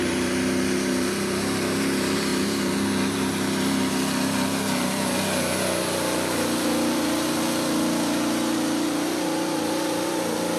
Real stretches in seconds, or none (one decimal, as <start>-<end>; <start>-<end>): 0.0-10.6